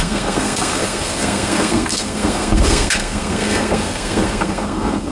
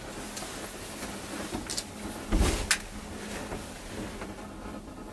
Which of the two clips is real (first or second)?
second